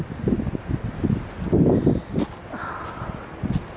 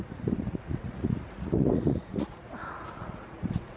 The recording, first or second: first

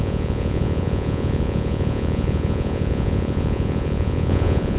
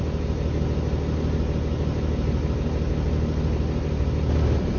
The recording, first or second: second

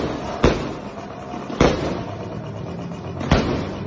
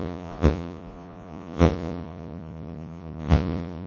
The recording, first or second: first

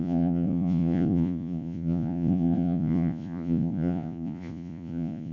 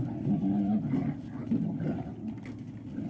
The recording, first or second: second